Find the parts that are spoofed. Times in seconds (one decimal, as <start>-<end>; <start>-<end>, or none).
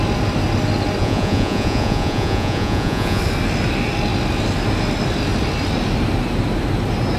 1.0-3.2